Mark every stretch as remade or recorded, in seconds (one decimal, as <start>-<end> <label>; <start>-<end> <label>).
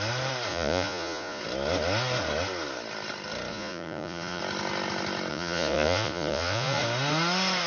0.0-0.5 recorded; 0.5-1.4 remade; 1.4-3.5 recorded; 3.5-4.4 remade; 4.4-5.3 recorded; 5.3-6.8 remade; 6.8-7.7 recorded